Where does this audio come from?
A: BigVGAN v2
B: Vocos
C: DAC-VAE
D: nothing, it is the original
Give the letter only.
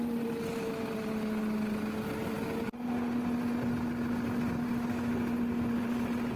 D